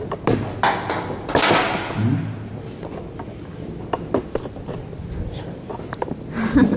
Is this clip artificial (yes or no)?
no